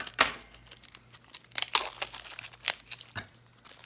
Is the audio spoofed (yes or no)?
no